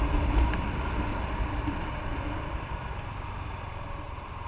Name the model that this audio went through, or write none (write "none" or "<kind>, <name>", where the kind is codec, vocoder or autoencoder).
vocoder, BigVGAN v2